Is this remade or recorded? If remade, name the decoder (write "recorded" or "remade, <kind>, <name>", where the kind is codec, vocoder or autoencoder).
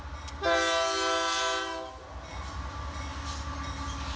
recorded